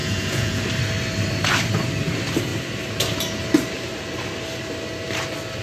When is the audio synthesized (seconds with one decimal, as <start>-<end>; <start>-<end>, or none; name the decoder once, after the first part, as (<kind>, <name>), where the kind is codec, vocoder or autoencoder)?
0.0-0.6 (vocoder, Vocos)